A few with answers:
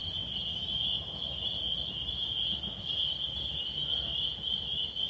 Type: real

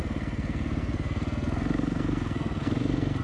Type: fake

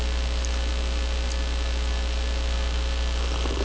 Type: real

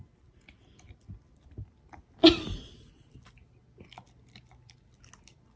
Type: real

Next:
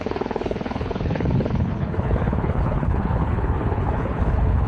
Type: fake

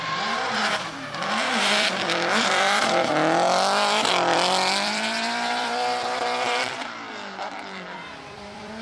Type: fake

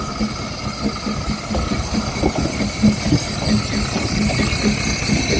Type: real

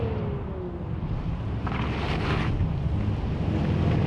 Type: real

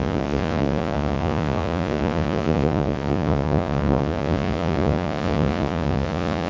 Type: fake